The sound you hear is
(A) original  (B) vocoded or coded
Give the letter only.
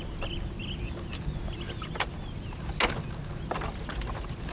A